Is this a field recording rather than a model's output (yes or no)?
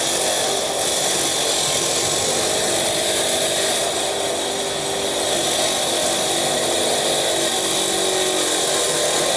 yes